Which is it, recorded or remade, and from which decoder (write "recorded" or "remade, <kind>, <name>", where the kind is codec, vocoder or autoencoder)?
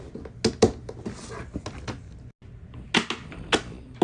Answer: recorded